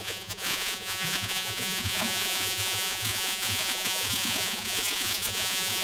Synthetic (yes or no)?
yes